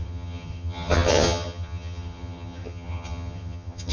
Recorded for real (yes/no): no